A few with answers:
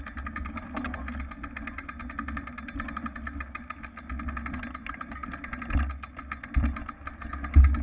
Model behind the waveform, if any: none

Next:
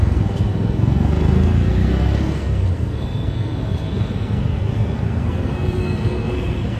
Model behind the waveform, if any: codec, SNAC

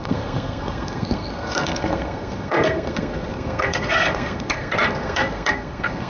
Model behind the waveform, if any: codec, SNAC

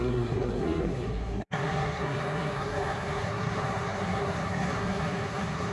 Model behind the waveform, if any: codec, SNAC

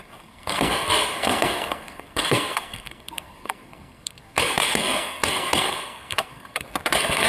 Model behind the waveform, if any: codec, SNAC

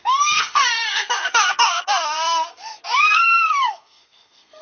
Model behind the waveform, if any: codec, SNAC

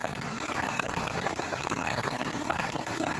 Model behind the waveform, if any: codec, SNAC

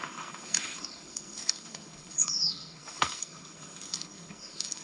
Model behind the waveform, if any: codec, SNAC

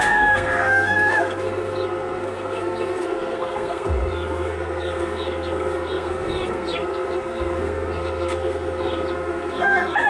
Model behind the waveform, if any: codec, SNAC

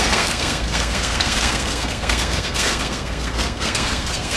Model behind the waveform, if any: codec, SNAC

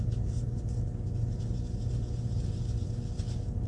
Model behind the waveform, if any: none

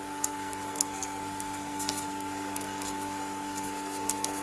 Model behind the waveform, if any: codec, SNAC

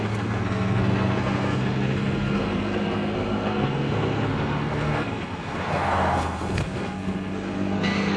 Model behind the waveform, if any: codec, SNAC